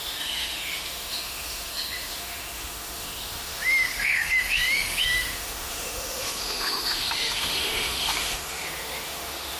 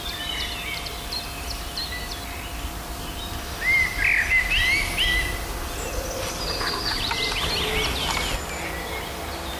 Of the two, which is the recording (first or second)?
second